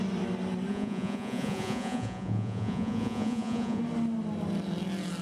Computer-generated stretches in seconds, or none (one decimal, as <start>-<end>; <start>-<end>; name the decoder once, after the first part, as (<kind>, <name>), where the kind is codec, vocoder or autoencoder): 0.7-3.8 (vocoder, Vocos)